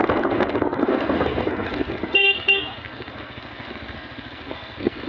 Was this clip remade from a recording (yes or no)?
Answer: yes